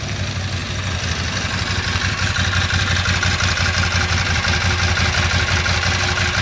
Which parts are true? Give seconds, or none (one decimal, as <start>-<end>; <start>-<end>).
0.0-6.4